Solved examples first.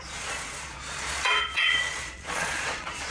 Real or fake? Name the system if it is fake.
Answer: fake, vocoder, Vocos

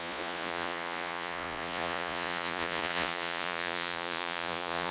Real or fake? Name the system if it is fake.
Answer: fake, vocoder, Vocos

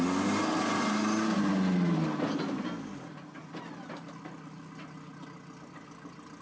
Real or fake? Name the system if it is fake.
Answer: real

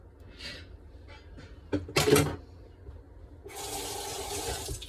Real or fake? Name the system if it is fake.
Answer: real